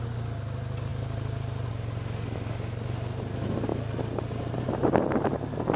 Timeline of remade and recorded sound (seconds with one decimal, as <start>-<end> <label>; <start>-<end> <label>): 0.0-5.8 recorded